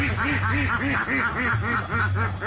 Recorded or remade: recorded